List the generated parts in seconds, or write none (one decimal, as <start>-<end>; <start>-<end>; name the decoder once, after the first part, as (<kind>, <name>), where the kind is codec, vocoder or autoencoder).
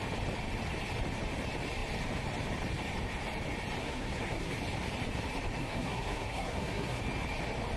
3.8-4.5 (codec, SNAC); 5.6-7.0